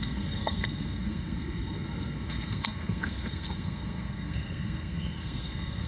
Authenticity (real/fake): fake